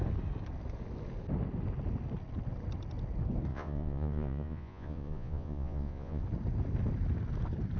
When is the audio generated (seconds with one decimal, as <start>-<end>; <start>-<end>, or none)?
3.5-6.2